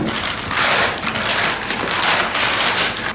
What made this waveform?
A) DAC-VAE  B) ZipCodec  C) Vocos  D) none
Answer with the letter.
D